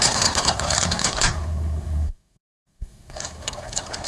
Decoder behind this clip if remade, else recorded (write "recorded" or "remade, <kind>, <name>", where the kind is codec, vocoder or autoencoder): remade, codec, SNAC